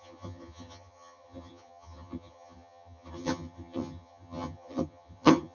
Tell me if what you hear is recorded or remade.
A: remade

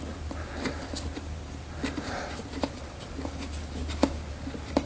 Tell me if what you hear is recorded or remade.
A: recorded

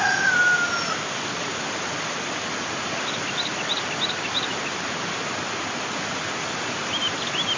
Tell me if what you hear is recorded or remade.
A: recorded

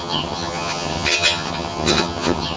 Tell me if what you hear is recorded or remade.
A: remade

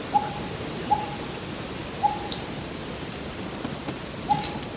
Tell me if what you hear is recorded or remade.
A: recorded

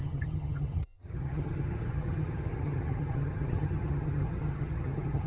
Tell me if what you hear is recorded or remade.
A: remade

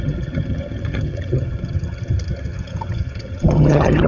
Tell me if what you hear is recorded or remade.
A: remade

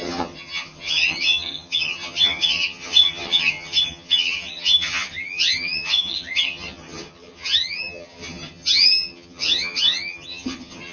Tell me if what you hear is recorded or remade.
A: remade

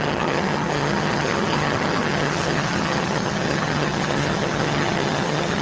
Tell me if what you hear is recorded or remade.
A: remade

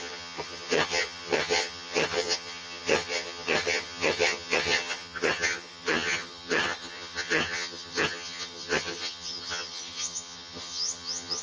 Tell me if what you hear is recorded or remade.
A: remade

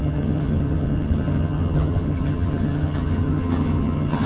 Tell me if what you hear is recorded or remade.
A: remade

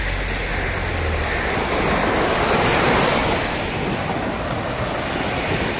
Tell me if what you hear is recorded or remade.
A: recorded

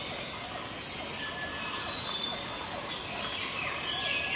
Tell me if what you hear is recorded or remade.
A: recorded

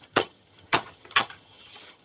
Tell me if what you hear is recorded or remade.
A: remade